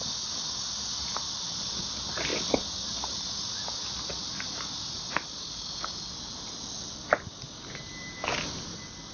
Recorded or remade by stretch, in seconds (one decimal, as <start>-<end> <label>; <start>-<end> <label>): 0.0-9.1 recorded